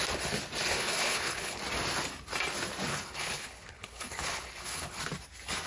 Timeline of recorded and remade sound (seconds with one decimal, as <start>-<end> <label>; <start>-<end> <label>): 0.0-0.7 recorded; 0.7-1.6 remade; 1.6-2.9 recorded; 2.9-5.0 remade; 5.0-5.7 recorded